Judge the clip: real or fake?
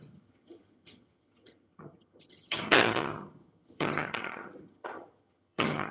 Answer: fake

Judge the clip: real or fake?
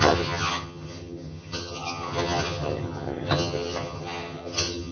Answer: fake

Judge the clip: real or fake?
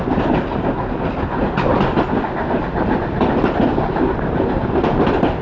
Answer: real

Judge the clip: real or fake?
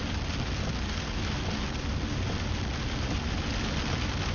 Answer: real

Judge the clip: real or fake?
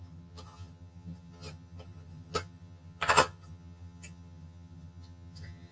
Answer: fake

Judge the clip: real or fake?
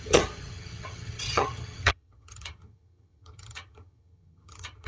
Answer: fake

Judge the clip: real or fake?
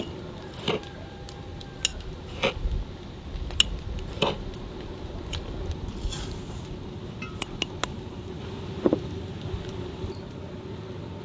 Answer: real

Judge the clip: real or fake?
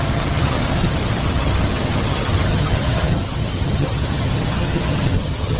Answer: fake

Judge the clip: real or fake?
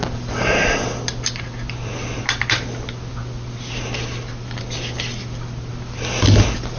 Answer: real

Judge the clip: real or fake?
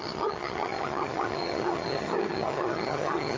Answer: fake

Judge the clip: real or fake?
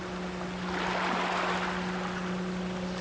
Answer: real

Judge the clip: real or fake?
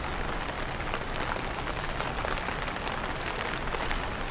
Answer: real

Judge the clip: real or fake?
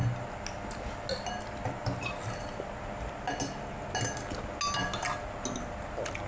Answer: real